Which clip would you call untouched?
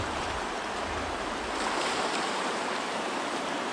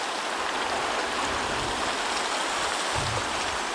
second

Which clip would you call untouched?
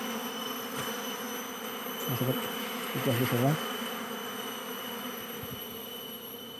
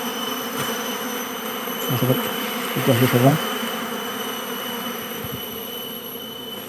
first